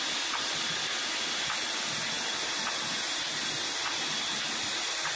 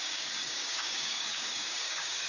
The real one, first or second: first